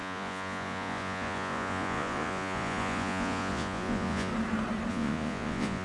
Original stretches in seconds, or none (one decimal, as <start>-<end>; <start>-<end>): 4.3-4.9